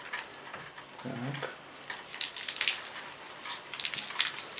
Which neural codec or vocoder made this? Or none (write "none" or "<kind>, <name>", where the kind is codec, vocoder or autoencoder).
none